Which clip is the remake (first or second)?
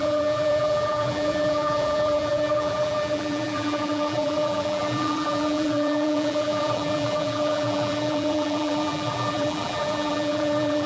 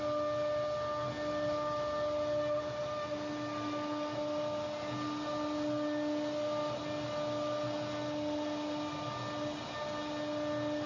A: first